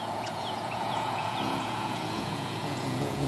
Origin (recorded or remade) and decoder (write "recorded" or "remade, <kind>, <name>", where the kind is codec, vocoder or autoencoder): remade, vocoder, Vocos